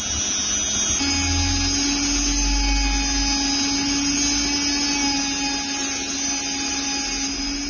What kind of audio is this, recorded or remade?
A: recorded